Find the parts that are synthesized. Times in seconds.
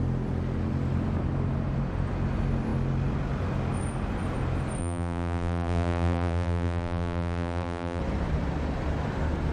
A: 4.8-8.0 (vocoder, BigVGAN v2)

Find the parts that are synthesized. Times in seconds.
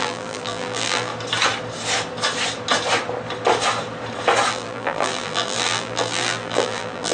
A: 0.0-1.1 (vocoder, BigVGAN v2); 4.5-7.1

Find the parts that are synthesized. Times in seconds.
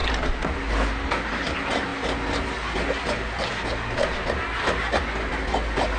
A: none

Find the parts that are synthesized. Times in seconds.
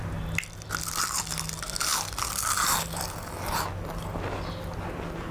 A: none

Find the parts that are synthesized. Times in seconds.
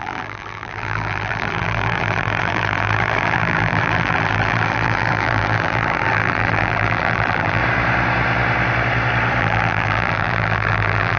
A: 0.0-7.6 (vocoder, BigVGAN v2); 9.4-11.2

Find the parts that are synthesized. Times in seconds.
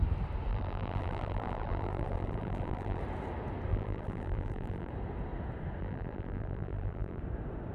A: 0.5-3.0 (vocoder, BigVGAN v2); 3.7-4.9; 5.8-7.2